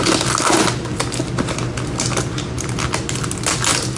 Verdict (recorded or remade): recorded